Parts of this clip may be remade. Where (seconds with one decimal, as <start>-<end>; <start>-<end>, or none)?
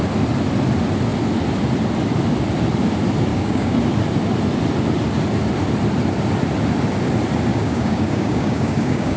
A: 3.3-3.8; 7.5-9.2